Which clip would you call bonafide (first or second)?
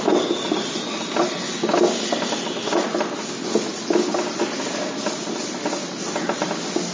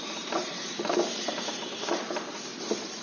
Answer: first